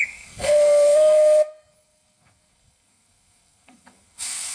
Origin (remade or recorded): remade